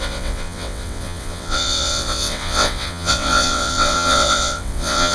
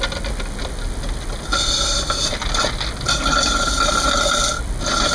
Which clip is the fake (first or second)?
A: first